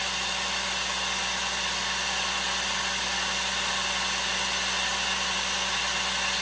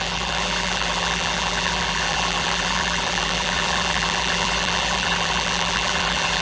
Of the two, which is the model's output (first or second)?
second